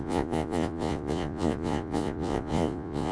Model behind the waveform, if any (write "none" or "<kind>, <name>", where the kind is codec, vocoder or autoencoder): vocoder, Vocos